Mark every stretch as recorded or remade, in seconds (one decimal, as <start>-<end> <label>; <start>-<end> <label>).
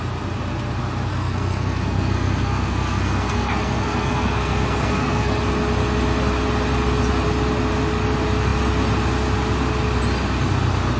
0.0-1.1 recorded; 1.1-5.4 remade; 5.4-11.0 recorded